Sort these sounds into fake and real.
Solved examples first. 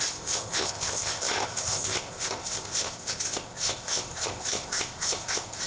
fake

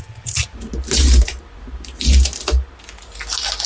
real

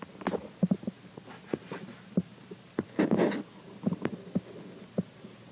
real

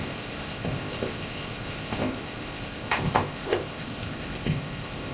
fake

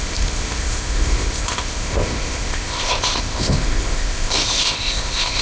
fake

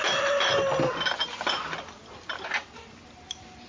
real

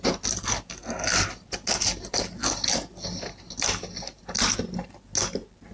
real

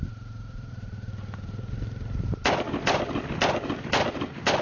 real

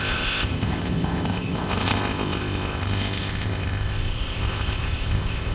fake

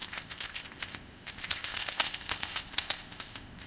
fake